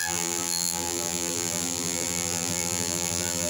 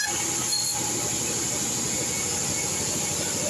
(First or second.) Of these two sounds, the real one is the second